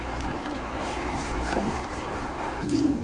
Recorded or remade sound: remade